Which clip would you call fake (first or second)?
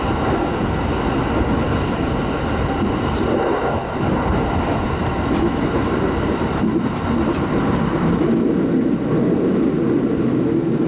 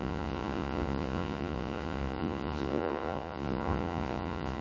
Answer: second